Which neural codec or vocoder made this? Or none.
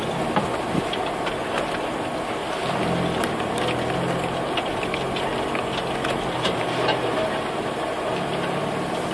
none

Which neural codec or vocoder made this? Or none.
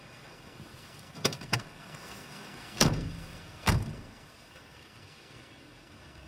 codec, SNAC